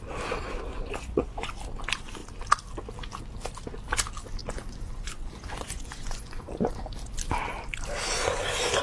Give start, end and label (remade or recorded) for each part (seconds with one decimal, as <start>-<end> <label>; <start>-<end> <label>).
0.0-0.7 recorded; 0.7-1.5 remade; 1.5-4.4 recorded; 4.4-6.8 remade; 6.8-8.8 recorded